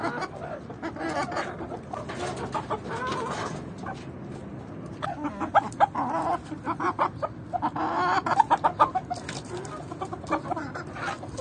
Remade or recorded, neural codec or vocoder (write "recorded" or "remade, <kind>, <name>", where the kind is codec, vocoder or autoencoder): recorded